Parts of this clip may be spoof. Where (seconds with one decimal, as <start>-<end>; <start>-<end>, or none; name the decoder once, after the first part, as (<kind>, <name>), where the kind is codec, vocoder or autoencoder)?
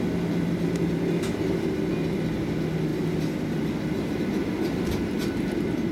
none